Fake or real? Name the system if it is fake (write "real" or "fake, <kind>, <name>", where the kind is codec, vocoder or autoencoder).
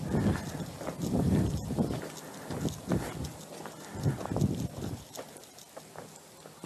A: real